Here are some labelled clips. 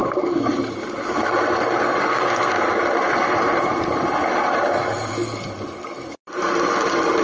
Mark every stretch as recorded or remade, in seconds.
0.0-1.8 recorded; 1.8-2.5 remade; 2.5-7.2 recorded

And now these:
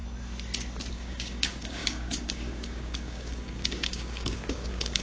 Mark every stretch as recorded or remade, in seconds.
0.0-0.9 recorded; 0.9-5.0 remade

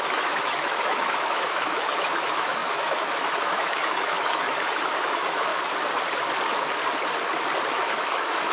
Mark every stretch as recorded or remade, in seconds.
0.0-5.5 remade; 5.5-7.7 recorded; 7.7-8.5 remade